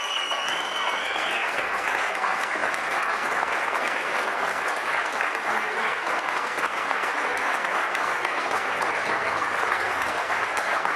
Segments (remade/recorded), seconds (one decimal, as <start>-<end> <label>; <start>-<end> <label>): 0.0-11.0 remade